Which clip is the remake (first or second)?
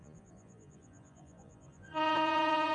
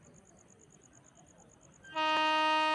first